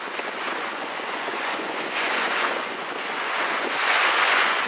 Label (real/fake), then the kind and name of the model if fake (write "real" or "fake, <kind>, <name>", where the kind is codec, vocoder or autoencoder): fake, vocoder, Vocos